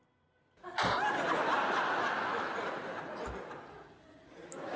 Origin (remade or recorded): recorded